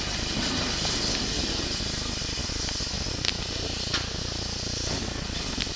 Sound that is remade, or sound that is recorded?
recorded